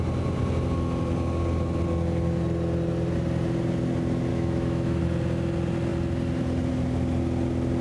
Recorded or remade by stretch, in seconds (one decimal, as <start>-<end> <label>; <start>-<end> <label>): 0.0-4.3 recorded; 4.3-5.0 remade; 5.0-7.8 recorded